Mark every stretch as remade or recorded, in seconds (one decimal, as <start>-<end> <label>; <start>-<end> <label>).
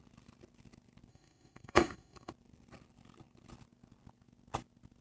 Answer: 0.0-1.1 recorded; 1.1-2.3 remade; 2.3-5.0 recorded